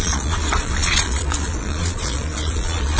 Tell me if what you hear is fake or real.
fake